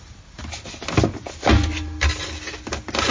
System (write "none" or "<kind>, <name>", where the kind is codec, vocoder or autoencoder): none